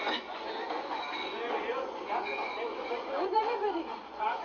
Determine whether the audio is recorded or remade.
remade